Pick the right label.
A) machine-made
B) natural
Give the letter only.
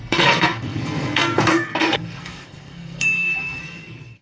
A